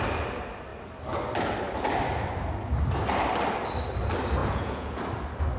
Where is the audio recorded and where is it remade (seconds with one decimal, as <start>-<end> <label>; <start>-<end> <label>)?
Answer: 0.0-4.4 recorded; 4.4-5.0 remade; 5.0-5.6 recorded